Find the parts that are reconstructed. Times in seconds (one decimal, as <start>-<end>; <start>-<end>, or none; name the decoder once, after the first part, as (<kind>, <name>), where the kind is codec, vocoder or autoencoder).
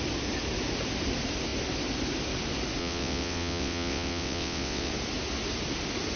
2.8-4.9 (vocoder, WaveNeXt)